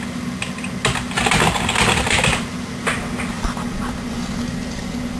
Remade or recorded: recorded